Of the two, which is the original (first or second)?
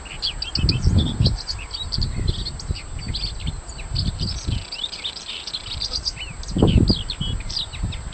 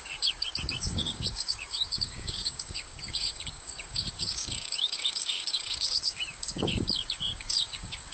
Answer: first